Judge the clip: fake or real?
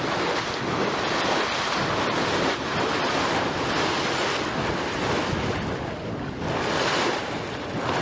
real